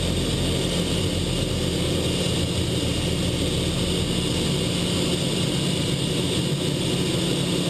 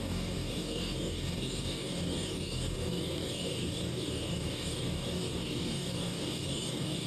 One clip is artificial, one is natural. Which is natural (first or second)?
first